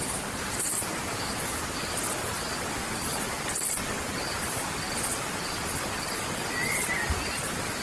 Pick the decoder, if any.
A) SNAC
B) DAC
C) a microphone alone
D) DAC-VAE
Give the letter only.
C